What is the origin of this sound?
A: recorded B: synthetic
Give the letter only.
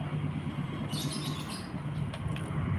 A